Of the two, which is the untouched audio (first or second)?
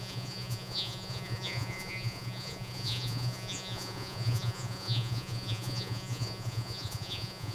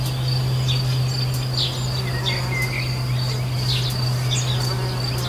second